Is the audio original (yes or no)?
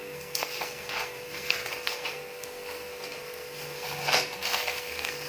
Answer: no